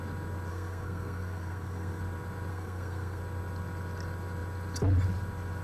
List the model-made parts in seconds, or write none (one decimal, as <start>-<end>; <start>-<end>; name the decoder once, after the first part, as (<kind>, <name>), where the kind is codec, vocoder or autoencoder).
0.5-2.0 (codec, SNAC); 2.5-3.2